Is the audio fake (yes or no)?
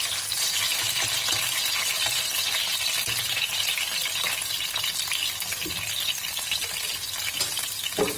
no